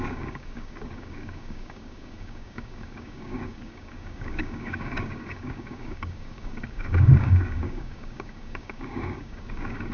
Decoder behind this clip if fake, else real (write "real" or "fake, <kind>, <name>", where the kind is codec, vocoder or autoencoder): fake, codec, DAC